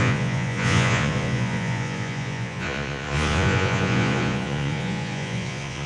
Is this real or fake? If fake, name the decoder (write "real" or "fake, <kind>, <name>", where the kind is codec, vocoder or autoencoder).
fake, vocoder, Vocos